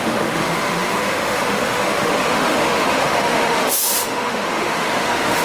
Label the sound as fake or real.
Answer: fake